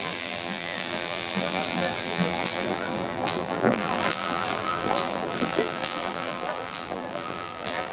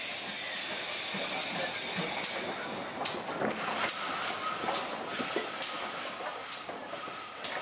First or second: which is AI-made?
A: first